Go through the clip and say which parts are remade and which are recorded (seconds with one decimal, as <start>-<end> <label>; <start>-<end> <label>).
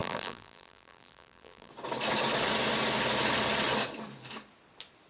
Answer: 0.0-1.7 remade; 1.7-5.1 recorded